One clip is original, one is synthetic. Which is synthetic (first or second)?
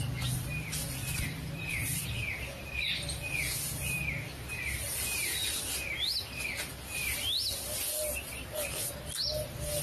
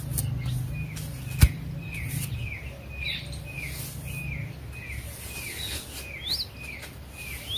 first